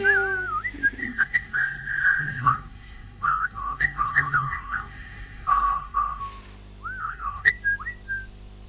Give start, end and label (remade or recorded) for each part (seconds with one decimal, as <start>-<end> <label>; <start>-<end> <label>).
0.0-1.0 recorded; 1.0-6.2 remade; 6.2-7.0 recorded; 7.0-7.5 remade; 7.5-8.7 recorded